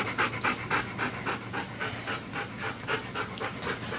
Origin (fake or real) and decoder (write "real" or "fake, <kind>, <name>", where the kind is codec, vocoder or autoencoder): real